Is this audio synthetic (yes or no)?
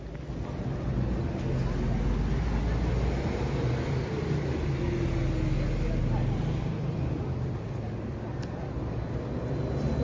no